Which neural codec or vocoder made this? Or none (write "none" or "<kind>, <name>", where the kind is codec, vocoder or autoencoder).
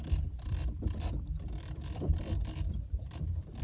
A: vocoder, BigVGAN v2